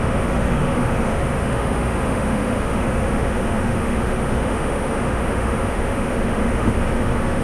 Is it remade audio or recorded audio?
remade